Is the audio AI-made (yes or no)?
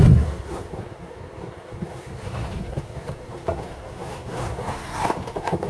yes